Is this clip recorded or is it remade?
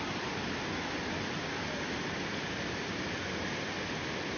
recorded